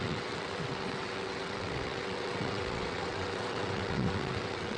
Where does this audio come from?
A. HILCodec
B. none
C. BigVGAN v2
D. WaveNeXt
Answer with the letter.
D